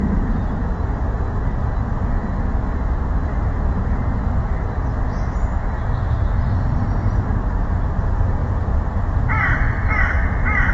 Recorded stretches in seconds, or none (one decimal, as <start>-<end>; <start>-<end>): 0.0-10.7